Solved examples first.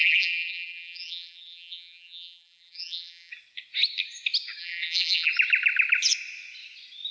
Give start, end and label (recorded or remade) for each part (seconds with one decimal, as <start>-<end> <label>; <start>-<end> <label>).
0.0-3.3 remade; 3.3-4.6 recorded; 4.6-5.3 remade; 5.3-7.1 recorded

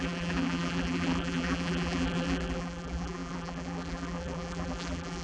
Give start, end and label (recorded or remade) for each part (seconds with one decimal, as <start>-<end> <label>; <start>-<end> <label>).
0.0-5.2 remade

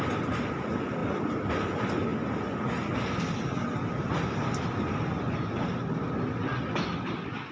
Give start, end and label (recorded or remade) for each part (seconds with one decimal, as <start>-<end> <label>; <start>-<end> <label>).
0.0-1.0 remade; 1.0-1.5 recorded; 1.5-2.1 remade; 2.1-3.2 recorded; 3.2-7.5 remade

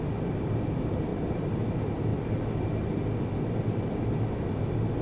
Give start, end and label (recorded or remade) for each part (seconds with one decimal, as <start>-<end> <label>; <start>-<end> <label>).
0.0-1.1 recorded; 1.1-1.7 remade; 1.7-5.0 recorded

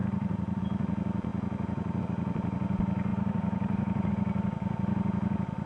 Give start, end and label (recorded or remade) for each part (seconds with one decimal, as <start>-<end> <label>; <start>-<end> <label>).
0.0-0.6 remade; 0.6-3.1 recorded; 3.1-4.1 remade; 4.1-5.7 recorded

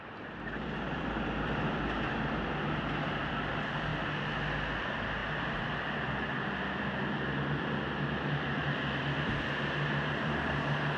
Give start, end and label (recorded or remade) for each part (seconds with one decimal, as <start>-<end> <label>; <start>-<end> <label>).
0.0-3.9 remade; 3.9-4.8 recorded; 4.8-5.2 remade; 5.2-10.1 recorded; 10.1-11.0 remade

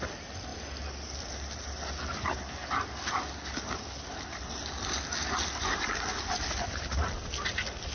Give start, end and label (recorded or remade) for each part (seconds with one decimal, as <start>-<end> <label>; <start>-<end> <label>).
0.0-0.5 recorded; 0.5-1.8 remade; 1.8-7.9 recorded